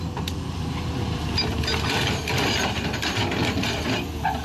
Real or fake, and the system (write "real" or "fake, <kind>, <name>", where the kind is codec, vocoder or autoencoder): real